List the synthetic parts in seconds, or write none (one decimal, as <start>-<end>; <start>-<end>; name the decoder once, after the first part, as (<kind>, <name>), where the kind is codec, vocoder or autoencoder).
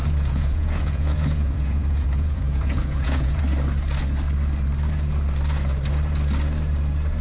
0.0-3.4 (vocoder, Vocos)